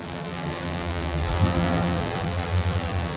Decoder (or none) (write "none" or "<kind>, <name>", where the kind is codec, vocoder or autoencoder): vocoder, BigVGAN v2